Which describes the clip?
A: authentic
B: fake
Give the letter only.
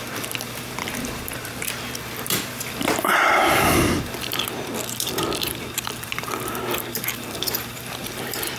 B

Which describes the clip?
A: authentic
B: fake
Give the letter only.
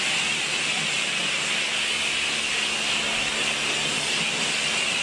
A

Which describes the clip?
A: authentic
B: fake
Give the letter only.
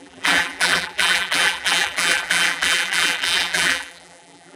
B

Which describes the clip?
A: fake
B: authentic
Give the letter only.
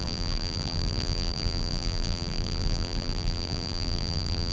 A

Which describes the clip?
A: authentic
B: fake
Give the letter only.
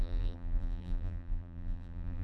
B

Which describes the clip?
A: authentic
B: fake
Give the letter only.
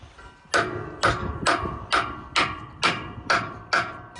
A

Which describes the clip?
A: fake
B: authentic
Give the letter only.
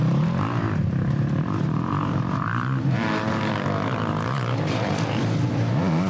A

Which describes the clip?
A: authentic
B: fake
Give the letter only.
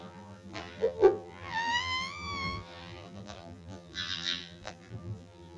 B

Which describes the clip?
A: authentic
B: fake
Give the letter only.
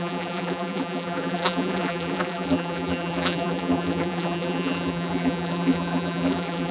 B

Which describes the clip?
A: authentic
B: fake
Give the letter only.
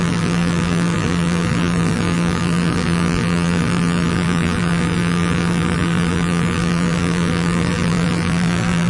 B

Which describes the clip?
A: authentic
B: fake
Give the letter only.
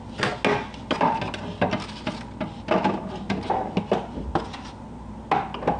A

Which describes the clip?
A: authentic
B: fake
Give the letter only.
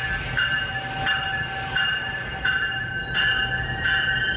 A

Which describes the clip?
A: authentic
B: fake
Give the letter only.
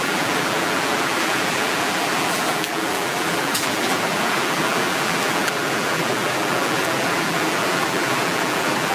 B